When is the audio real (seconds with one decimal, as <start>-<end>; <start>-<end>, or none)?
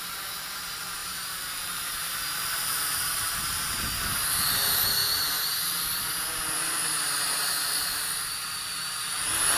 0.0-1.0; 2.2-5.0; 5.6-9.6